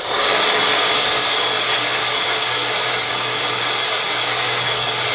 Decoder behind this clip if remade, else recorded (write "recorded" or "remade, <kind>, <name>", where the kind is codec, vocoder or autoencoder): remade, codec, DAC